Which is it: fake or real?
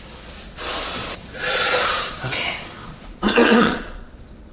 fake